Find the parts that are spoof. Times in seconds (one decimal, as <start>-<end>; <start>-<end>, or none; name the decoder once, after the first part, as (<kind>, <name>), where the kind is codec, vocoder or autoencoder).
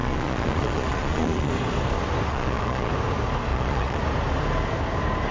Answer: 0.0-1.5 (vocoder, Vocos); 2.3-2.9; 3.5-4.0